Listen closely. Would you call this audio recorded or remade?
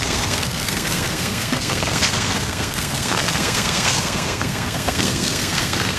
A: remade